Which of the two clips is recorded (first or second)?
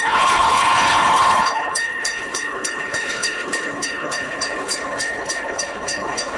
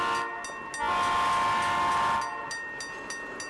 second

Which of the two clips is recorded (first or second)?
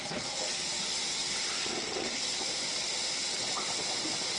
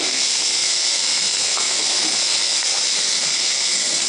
first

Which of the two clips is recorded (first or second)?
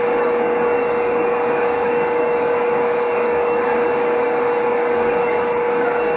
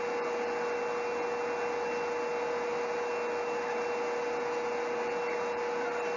second